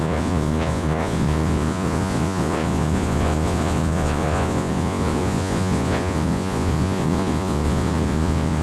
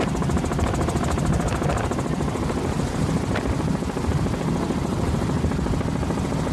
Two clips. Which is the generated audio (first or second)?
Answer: first